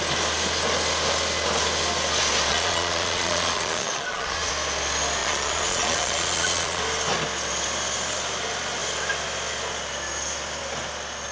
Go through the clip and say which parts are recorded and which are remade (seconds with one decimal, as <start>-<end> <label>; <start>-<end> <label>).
0.0-2.5 recorded; 2.5-4.5 remade; 4.5-5.2 recorded; 5.2-6.8 remade; 6.8-11.3 recorded